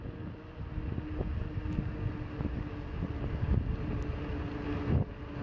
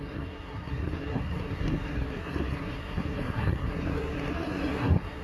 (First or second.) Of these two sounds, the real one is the first